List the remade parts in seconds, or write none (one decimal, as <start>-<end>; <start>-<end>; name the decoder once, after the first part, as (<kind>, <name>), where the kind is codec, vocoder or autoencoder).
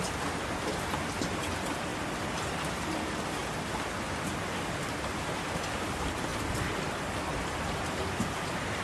0.0-1.9 (vocoder, BigVGAN v2); 2.8-3.4; 5.8-6.3; 7.7-8.8